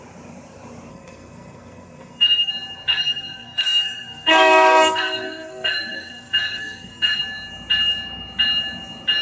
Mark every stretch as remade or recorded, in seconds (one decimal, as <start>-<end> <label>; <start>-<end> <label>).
0.0-0.9 recorded; 0.9-2.5 remade; 2.5-2.9 recorded; 2.9-7.2 remade; 7.2-9.2 recorded